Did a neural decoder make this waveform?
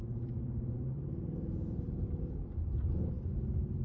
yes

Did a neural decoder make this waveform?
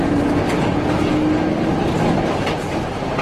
no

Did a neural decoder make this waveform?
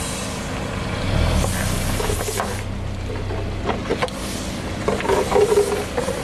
no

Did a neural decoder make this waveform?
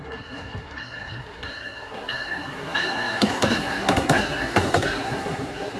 yes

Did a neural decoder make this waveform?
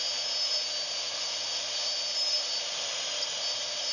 no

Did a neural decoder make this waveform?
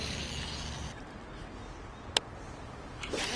no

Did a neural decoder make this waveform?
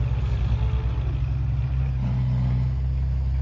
no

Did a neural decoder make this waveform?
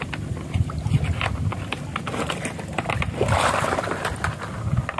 no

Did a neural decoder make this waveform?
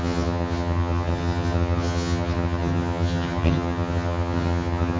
yes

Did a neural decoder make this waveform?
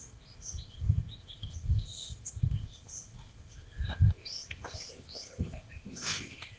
yes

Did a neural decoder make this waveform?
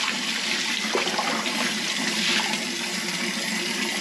no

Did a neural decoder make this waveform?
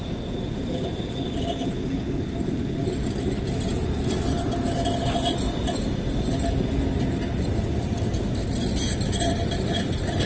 no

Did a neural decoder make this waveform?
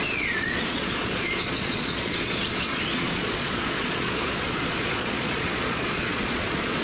yes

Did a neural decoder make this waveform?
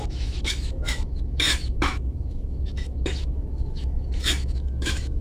yes